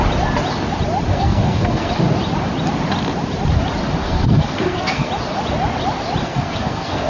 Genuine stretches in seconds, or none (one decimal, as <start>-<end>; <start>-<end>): 0.0-1.1; 1.9-4.0; 5.1-6.2

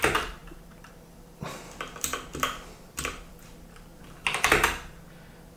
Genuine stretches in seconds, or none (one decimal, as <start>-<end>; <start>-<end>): 0.0-0.4; 1.0-2.3; 3.4-5.6

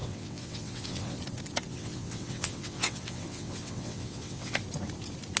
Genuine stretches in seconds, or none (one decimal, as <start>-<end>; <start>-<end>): 1.2-1.7; 4.6-5.4

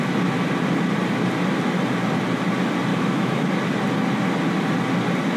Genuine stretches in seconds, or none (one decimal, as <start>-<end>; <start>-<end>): 0.0-2.9; 3.5-5.4

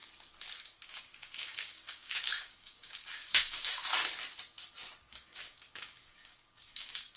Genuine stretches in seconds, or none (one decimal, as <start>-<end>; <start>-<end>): 0.0-0.6; 3.8-5.1